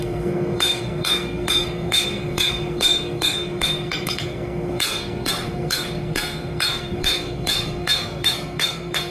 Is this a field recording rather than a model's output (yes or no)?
no